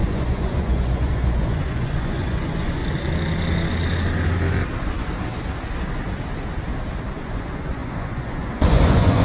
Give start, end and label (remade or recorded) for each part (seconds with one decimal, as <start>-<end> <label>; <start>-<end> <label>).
0.0-2.8 remade; 2.8-7.2 recorded; 7.2-9.2 remade